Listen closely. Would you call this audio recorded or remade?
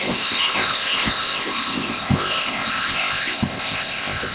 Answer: remade